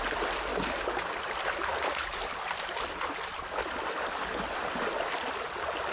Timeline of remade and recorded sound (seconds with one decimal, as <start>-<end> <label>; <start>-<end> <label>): 0.0-5.9 recorded